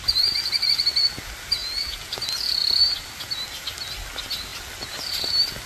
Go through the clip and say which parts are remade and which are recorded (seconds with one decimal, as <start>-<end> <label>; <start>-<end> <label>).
0.0-1.6 recorded; 1.6-2.1 remade; 2.1-5.7 recorded